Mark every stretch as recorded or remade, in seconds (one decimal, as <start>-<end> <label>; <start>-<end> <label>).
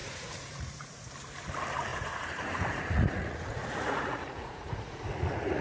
0.0-1.1 remade; 1.1-1.9 recorded; 1.9-5.6 remade